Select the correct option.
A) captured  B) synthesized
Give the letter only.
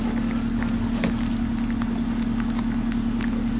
A